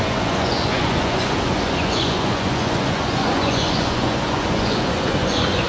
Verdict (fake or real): fake